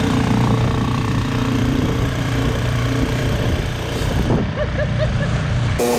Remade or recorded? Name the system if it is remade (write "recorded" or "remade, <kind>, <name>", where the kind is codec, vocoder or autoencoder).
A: remade, vocoder, BigVGAN v2